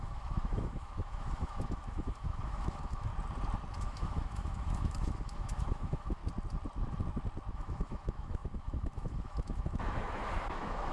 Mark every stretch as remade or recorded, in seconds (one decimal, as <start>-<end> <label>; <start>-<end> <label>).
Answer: 0.0-3.1 remade; 3.1-3.8 recorded; 3.8-6.2 remade; 6.2-7.5 recorded; 7.5-10.9 remade